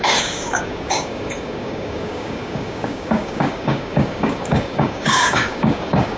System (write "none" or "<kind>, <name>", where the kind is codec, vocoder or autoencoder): codec, DAC